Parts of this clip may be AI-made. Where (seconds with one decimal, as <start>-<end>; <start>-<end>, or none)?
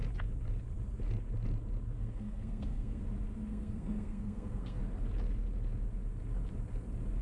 2.0-3.0; 3.5-4.8